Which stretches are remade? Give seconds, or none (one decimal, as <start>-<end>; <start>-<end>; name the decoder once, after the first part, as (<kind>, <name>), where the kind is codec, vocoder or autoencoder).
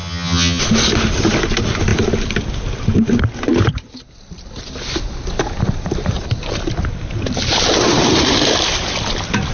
0.0-0.6 (vocoder, HiFi-GAN)